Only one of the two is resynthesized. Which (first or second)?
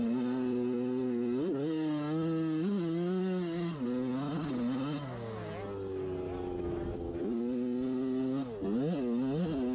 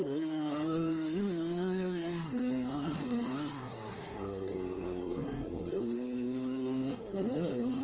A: second